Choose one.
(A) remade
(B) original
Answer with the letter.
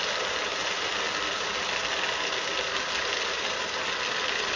B